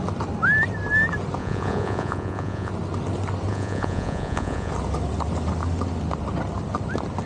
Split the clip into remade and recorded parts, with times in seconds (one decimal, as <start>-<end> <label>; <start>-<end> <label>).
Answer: 0.0-1.4 recorded; 1.4-2.7 remade; 2.7-3.5 recorded; 3.5-4.7 remade; 4.7-7.3 recorded